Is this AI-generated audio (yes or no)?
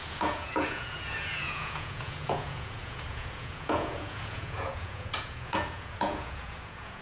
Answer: yes